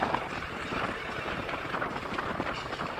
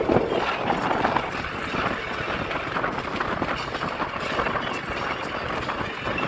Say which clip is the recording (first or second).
second